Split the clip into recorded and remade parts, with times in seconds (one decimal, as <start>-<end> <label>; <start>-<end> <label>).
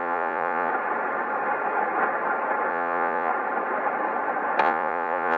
0.0-0.7 remade; 0.7-2.7 recorded; 2.7-3.3 remade; 3.3-4.6 recorded; 4.6-5.4 remade